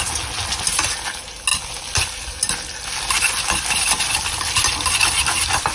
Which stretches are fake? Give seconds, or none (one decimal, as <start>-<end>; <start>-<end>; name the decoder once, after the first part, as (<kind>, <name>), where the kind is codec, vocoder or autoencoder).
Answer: 1.5-4.9 (vocoder, BigVGAN v2)